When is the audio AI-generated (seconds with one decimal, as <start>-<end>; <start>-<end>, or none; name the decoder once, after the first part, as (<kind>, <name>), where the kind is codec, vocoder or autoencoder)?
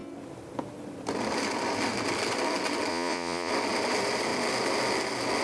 2.9-3.5 (vocoder, Vocos)